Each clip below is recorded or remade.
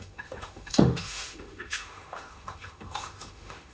remade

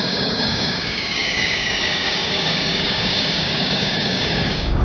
remade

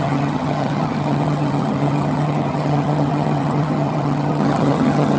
remade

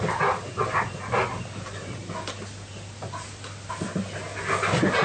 recorded